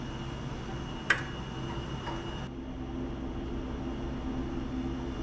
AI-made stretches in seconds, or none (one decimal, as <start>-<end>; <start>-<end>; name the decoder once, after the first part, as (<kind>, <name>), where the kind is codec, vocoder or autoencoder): none